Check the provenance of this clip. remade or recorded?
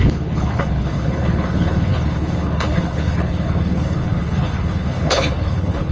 remade